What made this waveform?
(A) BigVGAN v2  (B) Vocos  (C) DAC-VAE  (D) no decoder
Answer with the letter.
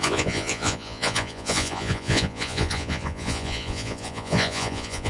B